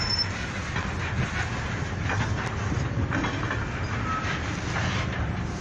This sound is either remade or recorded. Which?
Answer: recorded